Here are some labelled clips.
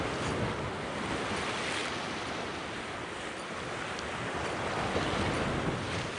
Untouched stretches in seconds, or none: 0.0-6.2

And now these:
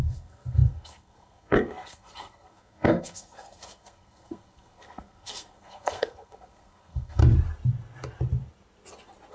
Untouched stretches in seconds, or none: 7.2-9.3

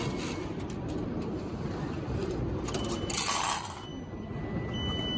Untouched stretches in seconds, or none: 0.0-5.2

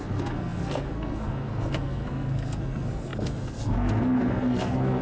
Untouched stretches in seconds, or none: none

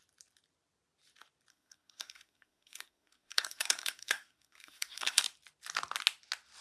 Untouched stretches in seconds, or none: 0.0-1.5; 5.2-6.6

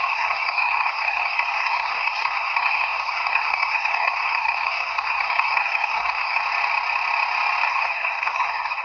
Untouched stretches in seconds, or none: 6.4-7.7

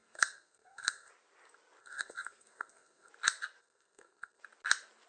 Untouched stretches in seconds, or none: 1.1-1.8; 3.1-3.6; 4.4-5.1

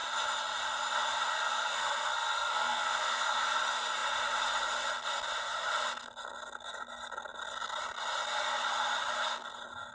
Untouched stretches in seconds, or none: 0.0-1.3; 3.4-9.9